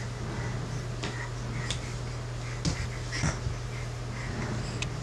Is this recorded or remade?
recorded